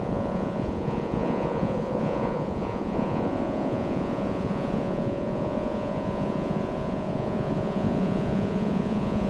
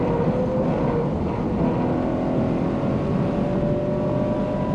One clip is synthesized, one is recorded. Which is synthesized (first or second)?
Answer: first